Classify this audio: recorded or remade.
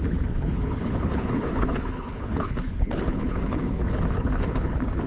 remade